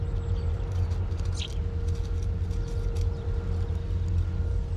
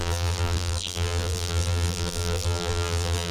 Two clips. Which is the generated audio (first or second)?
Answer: second